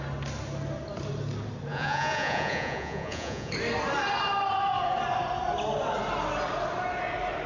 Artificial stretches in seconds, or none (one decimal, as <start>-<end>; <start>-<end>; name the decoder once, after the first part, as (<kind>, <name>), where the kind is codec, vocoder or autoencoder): 1.7-3.5 (vocoder, Vocos)

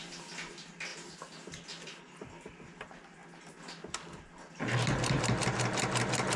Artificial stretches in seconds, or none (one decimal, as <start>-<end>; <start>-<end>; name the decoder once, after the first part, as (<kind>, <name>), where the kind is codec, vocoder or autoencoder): none

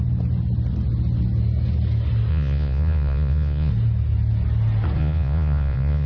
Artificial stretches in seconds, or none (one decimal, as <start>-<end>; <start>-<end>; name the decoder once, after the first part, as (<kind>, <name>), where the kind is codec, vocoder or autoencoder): 2.3-3.7 (vocoder, Vocos); 5.0-6.1